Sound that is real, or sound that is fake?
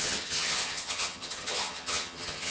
fake